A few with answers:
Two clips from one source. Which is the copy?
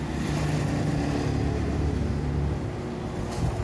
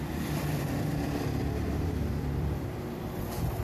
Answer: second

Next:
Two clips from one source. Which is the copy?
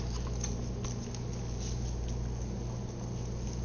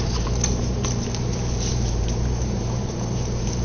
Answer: second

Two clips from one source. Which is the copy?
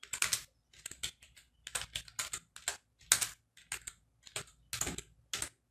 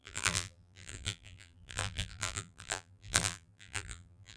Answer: second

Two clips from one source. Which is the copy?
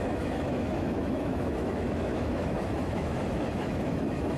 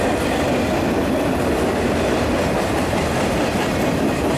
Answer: first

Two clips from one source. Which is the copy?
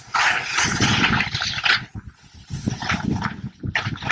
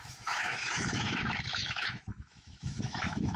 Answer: second